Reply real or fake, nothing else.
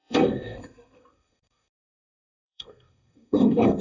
fake